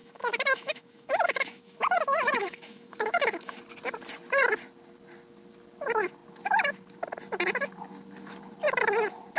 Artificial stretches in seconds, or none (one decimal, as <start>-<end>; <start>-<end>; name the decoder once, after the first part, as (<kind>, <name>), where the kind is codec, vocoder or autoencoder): 0.0-3.6 (autoencoder, DAC-VAE)